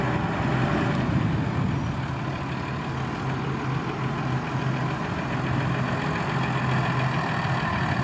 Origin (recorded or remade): recorded